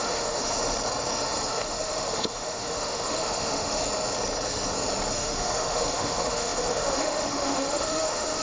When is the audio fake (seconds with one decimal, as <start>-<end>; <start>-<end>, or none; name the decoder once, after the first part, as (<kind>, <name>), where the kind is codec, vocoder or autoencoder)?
0.0-0.4 (autoencoder, DAC-VAE); 1.5-3.8; 5.1-8.4